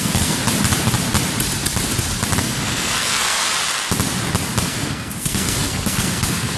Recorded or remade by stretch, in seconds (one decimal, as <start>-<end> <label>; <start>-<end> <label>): 0.0-0.4 remade; 0.4-2.4 recorded; 2.4-3.4 remade; 3.4-4.6 recorded; 4.6-6.6 remade